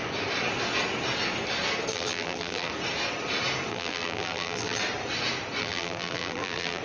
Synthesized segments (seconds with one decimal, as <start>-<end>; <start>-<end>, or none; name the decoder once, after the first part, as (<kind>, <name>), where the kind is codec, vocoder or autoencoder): 1.9-2.7 (vocoder, BigVGAN v2); 3.7-4.8; 5.6-6.8

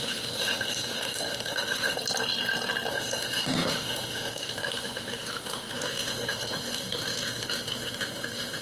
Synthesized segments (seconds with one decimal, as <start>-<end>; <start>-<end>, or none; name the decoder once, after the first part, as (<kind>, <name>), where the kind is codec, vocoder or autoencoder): 0.0-2.0 (autoencoder, DAC-VAE); 2.9-8.6

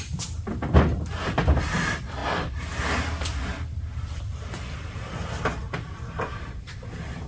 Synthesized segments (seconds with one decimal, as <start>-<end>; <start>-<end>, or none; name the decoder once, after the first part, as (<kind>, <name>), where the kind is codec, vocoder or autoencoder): none